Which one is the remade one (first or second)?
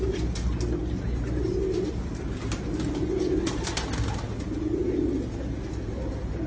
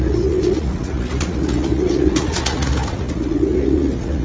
second